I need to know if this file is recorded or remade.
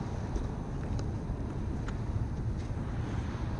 recorded